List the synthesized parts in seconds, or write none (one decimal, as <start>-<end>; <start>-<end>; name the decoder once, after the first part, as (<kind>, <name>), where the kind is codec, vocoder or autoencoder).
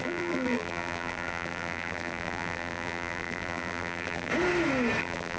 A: 0.0-4.3 (vocoder, BigVGAN v2); 5.0-5.4